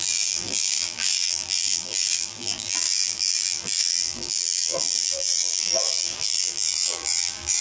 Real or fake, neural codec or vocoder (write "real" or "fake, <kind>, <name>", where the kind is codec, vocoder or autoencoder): fake, vocoder, BigVGAN v2